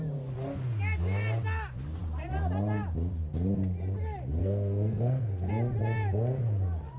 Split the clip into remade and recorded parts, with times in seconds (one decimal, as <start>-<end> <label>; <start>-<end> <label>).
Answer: 0.0-4.4 recorded; 4.4-5.5 remade; 5.5-7.0 recorded